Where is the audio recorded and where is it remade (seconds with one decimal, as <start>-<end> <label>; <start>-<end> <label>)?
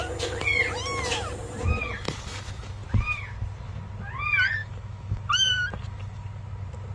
0.0-4.6 recorded; 4.6-5.2 remade; 5.2-6.9 recorded